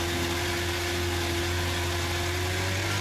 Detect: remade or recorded recorded